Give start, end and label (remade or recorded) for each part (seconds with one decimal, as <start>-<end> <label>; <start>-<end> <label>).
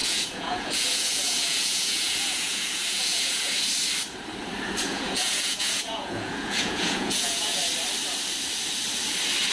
0.0-3.5 remade; 3.5-4.9 recorded; 4.9-7.6 remade; 7.6-9.5 recorded